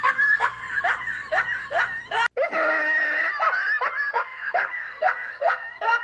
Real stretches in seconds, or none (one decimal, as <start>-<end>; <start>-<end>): 0.6-4.1